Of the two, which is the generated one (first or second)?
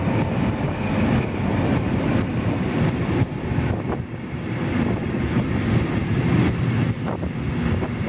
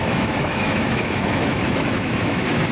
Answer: second